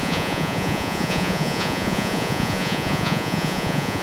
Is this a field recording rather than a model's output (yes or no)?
no